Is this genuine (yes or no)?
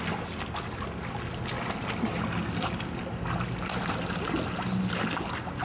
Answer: yes